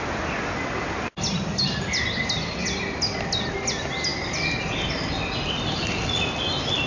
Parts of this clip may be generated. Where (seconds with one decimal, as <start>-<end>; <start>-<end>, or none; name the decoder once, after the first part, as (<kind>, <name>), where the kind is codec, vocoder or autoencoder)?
none